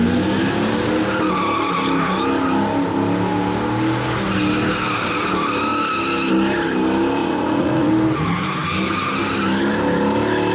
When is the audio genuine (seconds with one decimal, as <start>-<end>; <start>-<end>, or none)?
0.0-7.2; 7.9-10.5